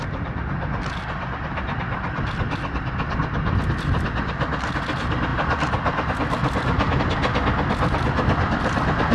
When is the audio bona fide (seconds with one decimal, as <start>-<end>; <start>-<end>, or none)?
0.0-9.1